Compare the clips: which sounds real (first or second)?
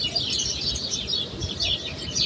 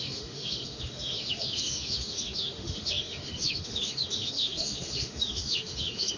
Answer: first